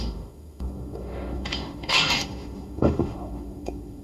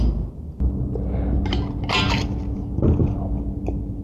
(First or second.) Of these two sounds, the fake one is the first